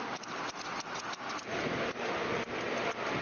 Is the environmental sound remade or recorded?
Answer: recorded